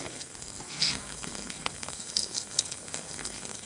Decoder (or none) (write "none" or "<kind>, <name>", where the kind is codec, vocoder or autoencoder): codec, SNAC